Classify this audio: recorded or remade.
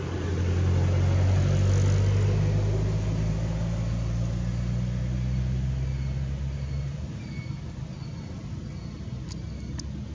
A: recorded